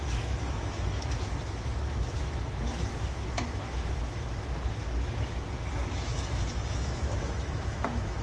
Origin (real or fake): fake